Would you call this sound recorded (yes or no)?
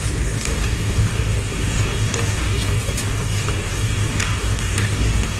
no